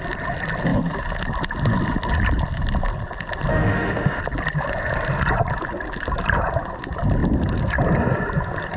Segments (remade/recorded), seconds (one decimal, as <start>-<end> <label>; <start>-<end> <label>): 0.0-3.5 recorded; 3.5-4.2 remade; 4.2-8.8 recorded

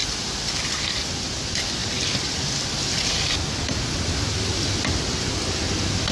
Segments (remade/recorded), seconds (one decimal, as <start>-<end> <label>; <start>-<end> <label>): 0.0-6.1 recorded

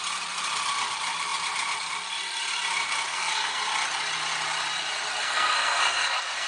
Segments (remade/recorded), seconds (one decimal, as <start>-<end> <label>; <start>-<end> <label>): 0.0-3.1 recorded; 3.1-3.6 remade; 3.6-5.2 recorded; 5.2-6.5 remade

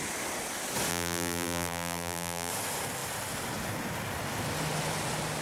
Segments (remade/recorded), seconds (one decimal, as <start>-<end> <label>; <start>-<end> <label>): 0.0-0.9 recorded; 0.9-2.5 remade; 2.5-5.4 recorded